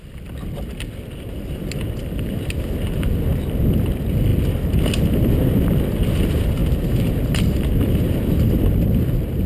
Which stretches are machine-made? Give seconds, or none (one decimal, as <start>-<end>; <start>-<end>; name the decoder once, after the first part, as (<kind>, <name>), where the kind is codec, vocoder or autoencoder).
none